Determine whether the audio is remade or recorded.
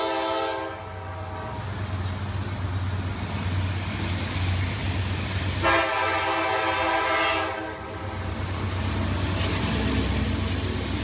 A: recorded